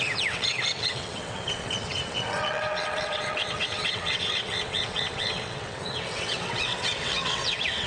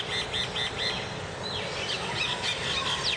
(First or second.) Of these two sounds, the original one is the second